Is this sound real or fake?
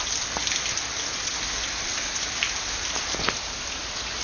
real